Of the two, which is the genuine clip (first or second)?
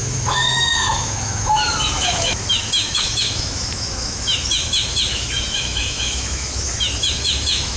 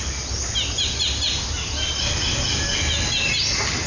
second